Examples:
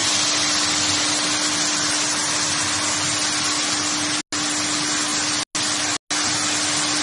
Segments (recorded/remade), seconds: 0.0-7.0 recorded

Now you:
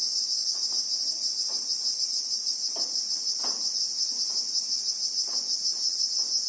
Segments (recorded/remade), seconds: 0.0-6.5 recorded

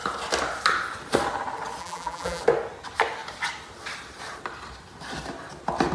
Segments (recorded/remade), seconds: 0.0-1.8 recorded; 1.8-2.4 remade; 2.4-5.9 recorded

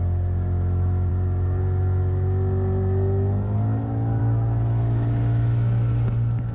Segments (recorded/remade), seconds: 0.0-6.5 recorded

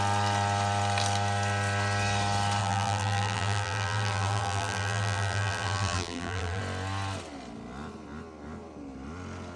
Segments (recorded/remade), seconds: 0.0-2.6 recorded; 2.6-6.6 remade; 6.6-9.6 recorded